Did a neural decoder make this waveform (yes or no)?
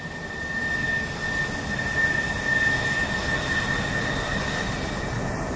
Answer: no